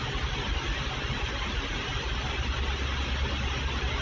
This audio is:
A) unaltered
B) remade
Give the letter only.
A